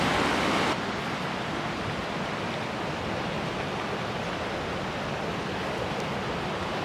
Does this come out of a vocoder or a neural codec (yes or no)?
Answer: no